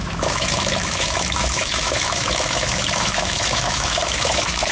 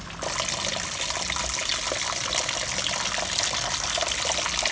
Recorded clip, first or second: second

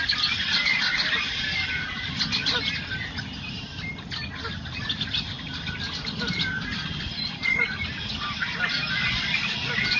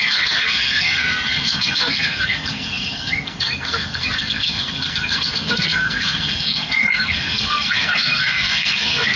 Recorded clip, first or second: first